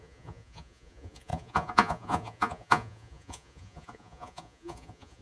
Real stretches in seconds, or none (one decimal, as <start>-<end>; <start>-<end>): none